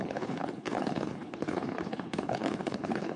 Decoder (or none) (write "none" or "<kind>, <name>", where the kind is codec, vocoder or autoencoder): codec, HILCodec